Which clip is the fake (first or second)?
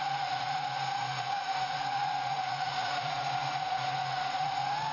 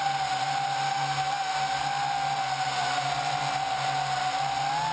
first